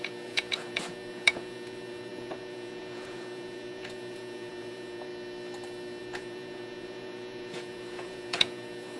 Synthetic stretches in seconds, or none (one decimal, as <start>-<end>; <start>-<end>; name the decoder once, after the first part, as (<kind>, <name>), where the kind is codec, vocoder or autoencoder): 0.0-5.1 (vocoder, Vocos); 6.0-9.0